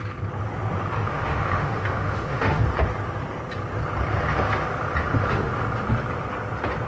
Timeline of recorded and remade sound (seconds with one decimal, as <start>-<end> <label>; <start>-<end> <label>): 0.0-1.0 recorded; 1.0-2.6 remade; 2.6-5.0 recorded; 5.0-5.5 remade; 5.5-6.9 recorded